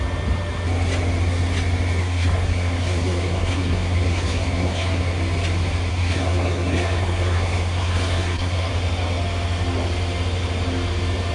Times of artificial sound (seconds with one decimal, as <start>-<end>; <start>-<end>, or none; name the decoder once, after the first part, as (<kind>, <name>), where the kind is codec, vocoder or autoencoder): 2.0-5.2 (codec, SNAC); 5.9-8.7